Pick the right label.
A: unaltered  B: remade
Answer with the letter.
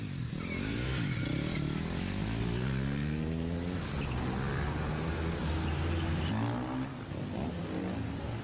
A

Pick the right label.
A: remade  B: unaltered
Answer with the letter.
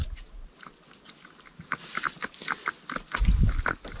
B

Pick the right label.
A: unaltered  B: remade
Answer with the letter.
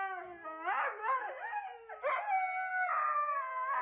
A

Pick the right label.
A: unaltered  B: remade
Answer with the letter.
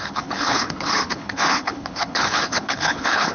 B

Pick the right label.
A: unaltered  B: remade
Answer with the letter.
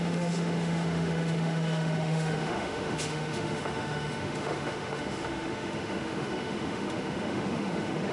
B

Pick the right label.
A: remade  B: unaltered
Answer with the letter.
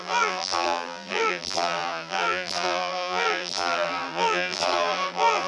A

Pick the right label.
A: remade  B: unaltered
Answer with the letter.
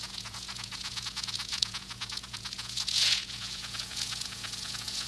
A